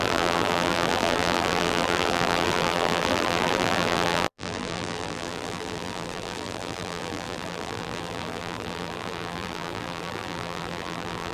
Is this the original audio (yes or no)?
no